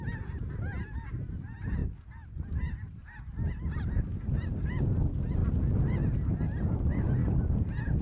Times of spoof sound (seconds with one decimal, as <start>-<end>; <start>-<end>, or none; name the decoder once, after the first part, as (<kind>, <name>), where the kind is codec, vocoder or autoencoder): none

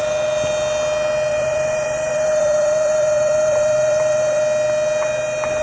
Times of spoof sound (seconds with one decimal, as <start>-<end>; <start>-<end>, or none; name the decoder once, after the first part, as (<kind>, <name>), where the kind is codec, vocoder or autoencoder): 1.3-4.4 (vocoder, BigVGAN v2)

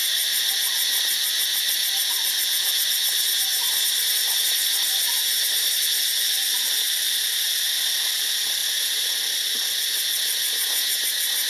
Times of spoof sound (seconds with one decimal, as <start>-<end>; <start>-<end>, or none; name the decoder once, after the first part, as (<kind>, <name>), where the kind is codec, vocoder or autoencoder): 0.0-0.5 (vocoder, BigVGAN v2); 3.5-5.8

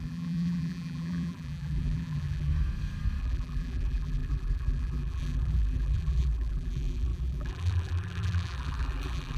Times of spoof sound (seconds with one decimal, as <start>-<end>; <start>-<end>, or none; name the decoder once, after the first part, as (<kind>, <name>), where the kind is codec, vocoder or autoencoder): 0.0-2.5 (vocoder, BigVGAN v2); 3.2-9.4

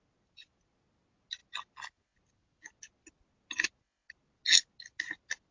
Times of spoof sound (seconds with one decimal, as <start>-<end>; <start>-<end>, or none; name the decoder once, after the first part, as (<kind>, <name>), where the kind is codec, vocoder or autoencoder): none

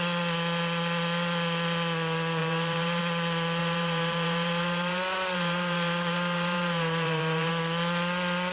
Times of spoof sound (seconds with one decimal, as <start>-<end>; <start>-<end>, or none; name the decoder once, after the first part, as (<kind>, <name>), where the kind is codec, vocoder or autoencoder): 2.4-3.0 (vocoder, BigVGAN v2); 3.6-7.5